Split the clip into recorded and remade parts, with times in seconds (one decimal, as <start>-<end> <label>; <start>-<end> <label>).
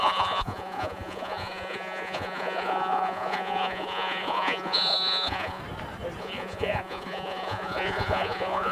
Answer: 0.0-5.6 remade; 5.6-6.2 recorded; 6.2-8.7 remade